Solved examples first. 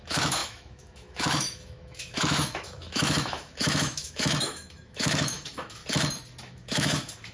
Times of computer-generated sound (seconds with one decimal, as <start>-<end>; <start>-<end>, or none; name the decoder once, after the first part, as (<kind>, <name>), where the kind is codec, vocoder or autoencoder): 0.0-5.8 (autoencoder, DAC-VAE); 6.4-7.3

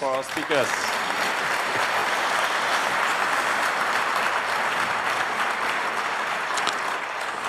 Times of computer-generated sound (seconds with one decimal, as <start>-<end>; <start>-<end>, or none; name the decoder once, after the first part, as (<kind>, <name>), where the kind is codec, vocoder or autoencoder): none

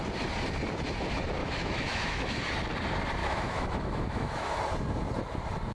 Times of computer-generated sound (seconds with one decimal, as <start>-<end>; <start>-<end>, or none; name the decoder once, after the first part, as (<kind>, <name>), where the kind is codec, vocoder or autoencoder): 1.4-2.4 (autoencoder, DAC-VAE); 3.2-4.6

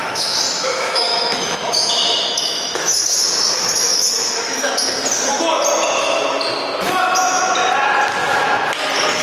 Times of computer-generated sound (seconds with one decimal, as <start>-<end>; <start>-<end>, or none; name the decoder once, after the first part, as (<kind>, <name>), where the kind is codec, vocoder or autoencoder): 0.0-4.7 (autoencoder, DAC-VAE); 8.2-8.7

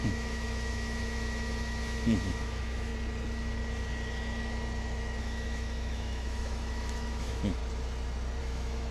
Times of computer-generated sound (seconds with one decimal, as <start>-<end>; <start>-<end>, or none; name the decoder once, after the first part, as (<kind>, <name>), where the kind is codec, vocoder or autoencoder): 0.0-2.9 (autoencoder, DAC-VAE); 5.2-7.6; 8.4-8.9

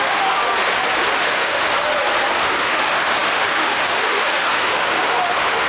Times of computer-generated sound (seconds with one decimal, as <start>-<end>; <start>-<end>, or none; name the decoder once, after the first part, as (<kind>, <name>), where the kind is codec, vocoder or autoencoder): 0.0-0.4 (autoencoder, DAC-VAE); 1.2-1.7; 2.4-5.7